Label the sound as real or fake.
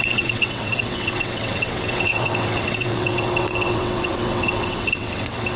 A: fake